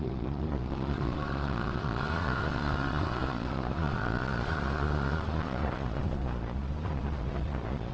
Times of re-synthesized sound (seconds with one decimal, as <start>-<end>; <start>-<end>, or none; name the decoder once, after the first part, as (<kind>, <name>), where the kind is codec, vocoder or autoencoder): 0.0-7.9 (vocoder, Vocos)